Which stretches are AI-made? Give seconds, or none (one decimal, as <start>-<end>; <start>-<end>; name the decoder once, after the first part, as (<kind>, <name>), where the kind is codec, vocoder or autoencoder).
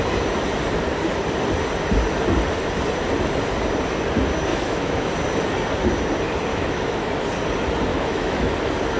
4.5-5.1 (autoencoder, DAC-VAE); 6.5-7.1; 7.9-8.5